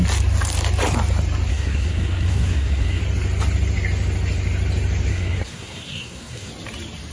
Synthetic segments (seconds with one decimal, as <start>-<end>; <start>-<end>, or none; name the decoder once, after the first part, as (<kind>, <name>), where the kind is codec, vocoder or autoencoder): 1.5-3.0 (codec, SNAC); 5.1-6.5